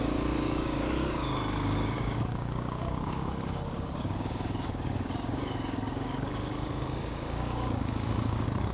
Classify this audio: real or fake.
fake